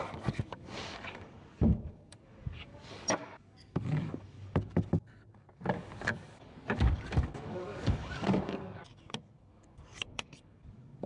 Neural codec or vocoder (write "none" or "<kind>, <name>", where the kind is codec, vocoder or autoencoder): codec, DAC